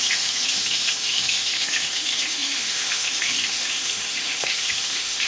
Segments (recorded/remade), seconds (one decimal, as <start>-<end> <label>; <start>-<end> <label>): 0.0-5.3 remade